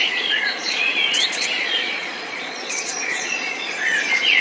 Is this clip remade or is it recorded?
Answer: remade